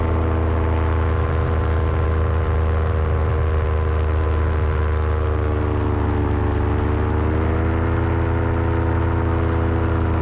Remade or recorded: recorded